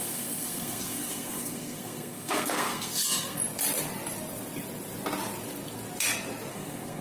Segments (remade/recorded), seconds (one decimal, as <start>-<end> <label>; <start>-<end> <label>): 0.0-3.4 remade; 3.4-6.5 recorded; 6.5-7.0 remade